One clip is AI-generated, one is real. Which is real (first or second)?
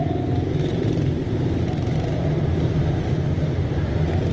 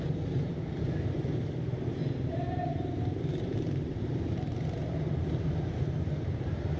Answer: first